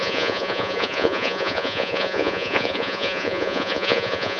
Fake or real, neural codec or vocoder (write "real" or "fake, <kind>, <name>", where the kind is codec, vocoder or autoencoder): fake, vocoder, Vocos